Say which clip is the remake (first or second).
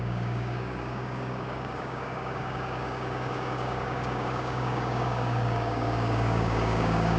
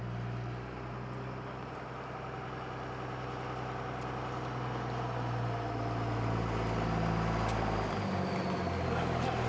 first